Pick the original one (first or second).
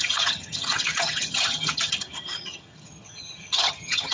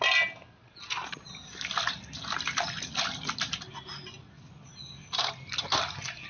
second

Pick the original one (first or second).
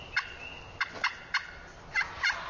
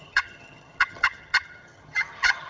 first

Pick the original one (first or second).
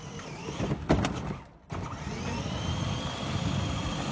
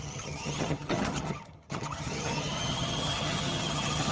first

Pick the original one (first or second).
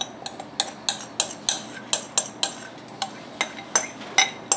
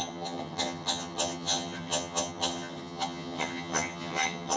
first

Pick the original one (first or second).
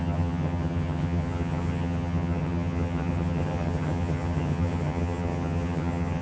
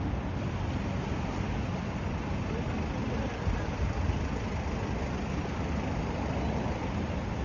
second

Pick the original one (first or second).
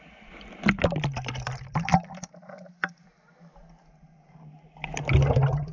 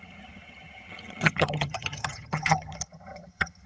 first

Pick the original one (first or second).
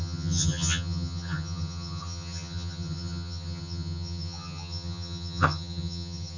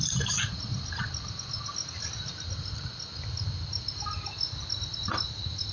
second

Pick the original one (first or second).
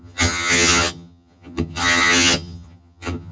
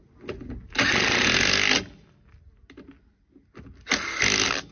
second